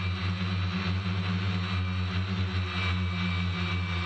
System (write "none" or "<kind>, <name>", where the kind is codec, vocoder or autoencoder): none